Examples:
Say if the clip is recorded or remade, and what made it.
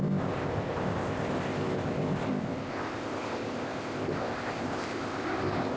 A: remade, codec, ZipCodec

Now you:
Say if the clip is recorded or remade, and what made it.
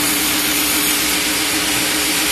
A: recorded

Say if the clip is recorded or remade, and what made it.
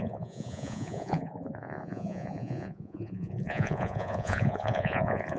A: remade, vocoder, Vocos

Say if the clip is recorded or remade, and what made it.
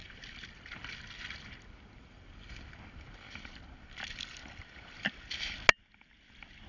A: recorded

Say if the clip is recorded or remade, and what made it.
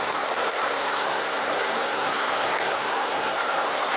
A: remade, codec, SNAC